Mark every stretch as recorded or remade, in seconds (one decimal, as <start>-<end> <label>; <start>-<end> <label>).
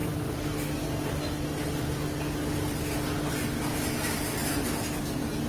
0.0-5.5 recorded